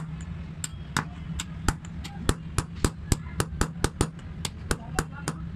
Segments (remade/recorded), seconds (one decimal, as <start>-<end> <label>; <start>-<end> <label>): 0.0-5.6 recorded